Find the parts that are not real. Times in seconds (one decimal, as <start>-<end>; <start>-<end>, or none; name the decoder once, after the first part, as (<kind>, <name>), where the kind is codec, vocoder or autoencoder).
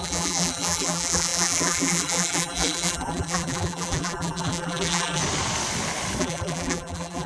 0.0-5.2 (vocoder, BigVGAN v2); 6.2-7.3